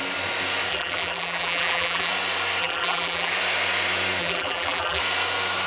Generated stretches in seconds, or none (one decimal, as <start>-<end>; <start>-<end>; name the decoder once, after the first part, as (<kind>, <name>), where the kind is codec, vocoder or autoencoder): 0.7-2.1 (vocoder, BigVGAN v2); 2.6-3.3; 4.2-5.0